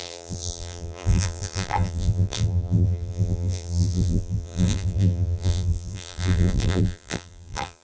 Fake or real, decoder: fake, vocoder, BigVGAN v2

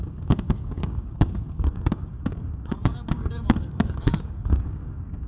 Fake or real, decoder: fake, codec, DAC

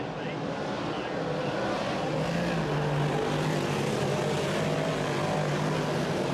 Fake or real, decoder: real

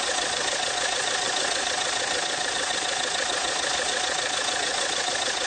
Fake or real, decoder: fake, vocoder, Vocos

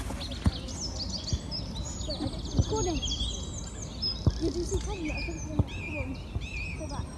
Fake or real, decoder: real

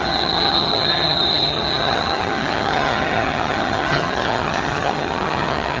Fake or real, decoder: fake, vocoder, HiFi-GAN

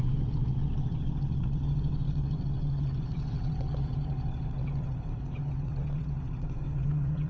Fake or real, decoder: fake, vocoder, WaveNeXt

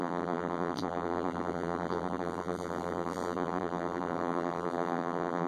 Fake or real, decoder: fake, vocoder, BigVGAN v2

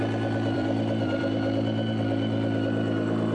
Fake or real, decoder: fake, vocoder, BigVGAN v2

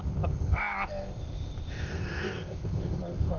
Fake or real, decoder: fake, codec, ZipCodec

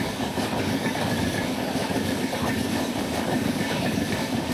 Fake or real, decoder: fake, codec, DAC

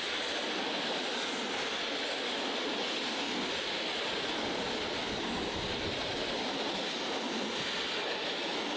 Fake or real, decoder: real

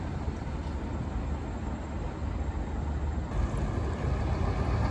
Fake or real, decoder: real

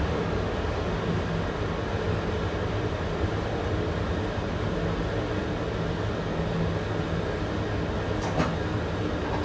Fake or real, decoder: real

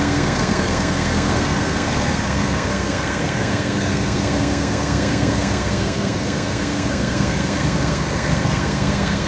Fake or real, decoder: fake, codec, SNAC